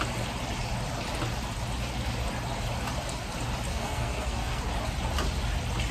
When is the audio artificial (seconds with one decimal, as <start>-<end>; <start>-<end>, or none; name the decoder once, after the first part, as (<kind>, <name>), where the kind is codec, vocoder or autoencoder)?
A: 3.7-4.6 (codec, SNAC)